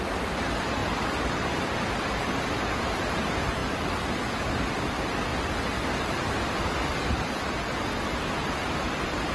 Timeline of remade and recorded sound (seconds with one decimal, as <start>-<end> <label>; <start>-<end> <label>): 0.0-9.3 recorded